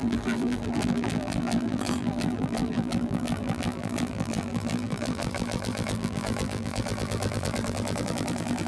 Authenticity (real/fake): fake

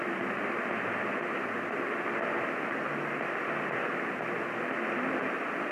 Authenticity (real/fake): real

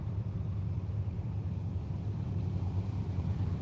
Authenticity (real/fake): fake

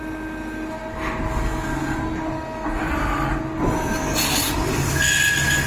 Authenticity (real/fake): real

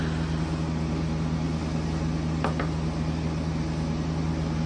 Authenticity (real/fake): real